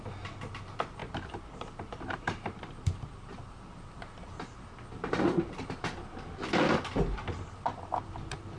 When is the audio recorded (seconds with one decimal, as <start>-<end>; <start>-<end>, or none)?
0.0-1.0; 3.1-8.6